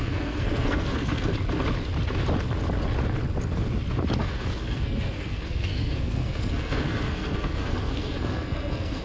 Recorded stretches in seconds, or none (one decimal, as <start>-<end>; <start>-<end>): 1.3-4.2

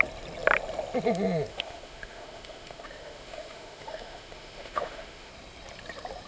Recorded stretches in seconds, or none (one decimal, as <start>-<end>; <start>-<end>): 0.0-1.5; 5.3-6.3

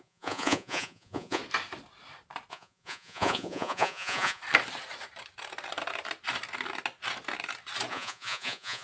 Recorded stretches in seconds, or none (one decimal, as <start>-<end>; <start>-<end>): 1.4-2.5; 4.4-7.9

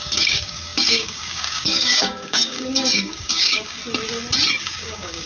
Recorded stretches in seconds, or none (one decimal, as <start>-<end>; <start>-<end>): 3.8-4.6

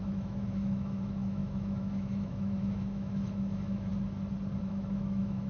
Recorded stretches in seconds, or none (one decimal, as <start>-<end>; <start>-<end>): 3.9-4.6

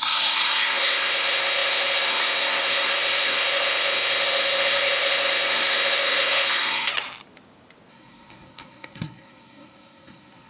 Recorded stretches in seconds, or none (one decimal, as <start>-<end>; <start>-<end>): 6.9-7.9

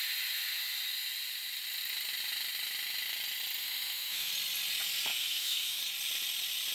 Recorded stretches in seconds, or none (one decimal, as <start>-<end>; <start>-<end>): 0.0-3.6; 4.3-5.1; 5.8-6.7

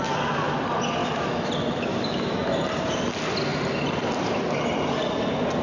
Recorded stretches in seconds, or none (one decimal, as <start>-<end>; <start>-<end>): 0.0-1.0; 1.5-1.9; 2.6-5.6